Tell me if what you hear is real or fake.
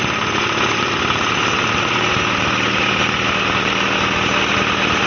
real